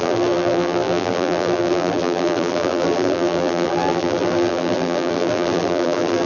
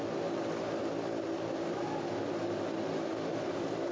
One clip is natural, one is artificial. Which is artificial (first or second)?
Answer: first